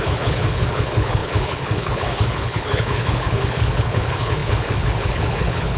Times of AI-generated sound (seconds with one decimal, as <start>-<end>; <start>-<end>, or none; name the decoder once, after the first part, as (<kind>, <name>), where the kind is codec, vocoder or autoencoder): 0.0-5.8 (codec, HILCodec)